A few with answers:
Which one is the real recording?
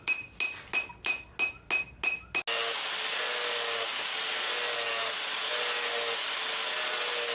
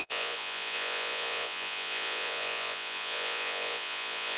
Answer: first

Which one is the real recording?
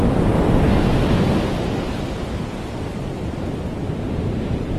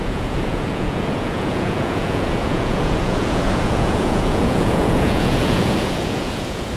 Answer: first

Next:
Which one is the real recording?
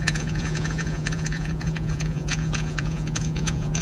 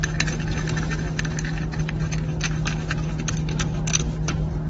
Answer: second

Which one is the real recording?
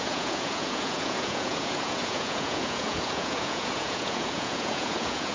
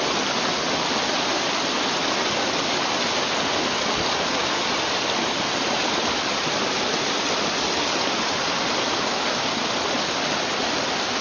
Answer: second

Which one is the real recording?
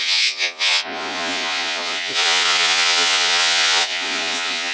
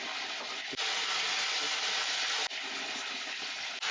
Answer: second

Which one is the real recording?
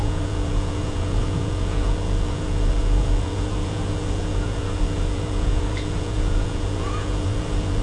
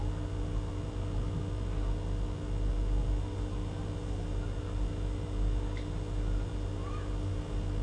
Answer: second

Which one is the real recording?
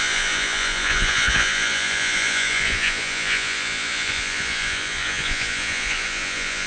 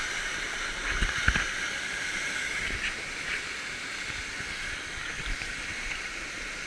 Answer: second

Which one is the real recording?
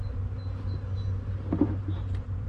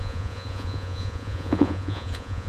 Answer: first